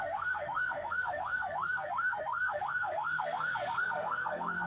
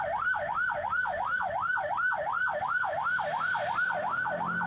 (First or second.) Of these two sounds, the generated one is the first